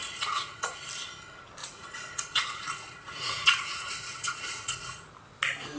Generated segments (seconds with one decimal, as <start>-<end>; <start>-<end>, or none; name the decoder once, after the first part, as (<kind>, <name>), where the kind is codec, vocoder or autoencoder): 0.0-0.7 (vocoder, Vocos); 1.6-5.1